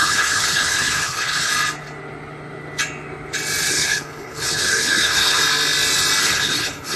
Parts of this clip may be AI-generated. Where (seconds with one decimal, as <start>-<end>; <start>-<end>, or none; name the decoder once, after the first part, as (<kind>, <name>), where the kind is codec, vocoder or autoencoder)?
0.0-1.5 (codec, HILCodec); 3.7-5.4; 6.2-7.0